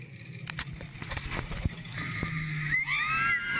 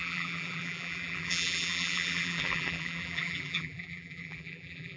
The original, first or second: first